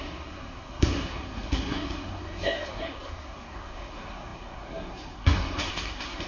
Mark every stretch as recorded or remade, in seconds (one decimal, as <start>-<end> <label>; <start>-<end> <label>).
0.0-6.3 remade